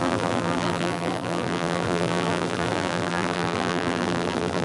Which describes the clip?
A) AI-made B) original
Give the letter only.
A